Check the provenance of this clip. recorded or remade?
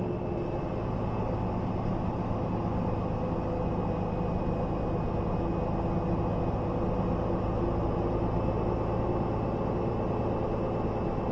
recorded